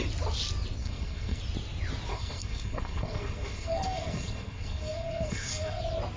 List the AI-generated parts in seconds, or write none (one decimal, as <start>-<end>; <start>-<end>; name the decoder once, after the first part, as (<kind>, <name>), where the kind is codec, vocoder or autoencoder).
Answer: 0.8-1.4 (codec, SNAC); 2.1-5.8